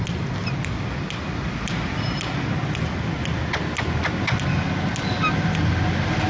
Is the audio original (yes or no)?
yes